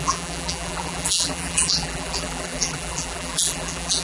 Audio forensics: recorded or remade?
remade